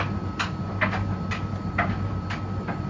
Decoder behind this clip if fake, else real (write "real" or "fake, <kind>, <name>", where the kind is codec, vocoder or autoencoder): real